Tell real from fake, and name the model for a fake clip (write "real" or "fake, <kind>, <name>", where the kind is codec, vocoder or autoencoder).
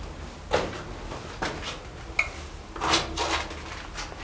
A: real